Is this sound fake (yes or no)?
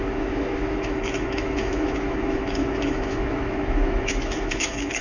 yes